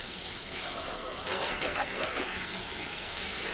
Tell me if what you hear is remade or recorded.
remade